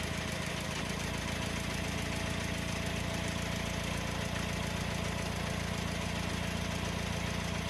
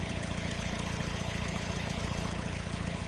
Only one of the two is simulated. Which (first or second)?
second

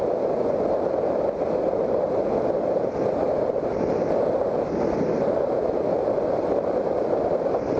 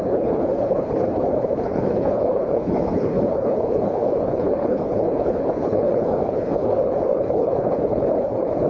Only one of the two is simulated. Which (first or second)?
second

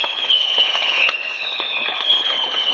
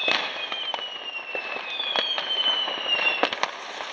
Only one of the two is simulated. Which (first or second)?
first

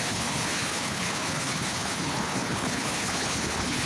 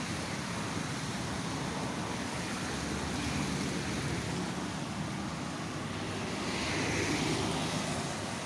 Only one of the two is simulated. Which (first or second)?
first